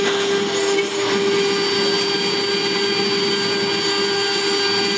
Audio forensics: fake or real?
real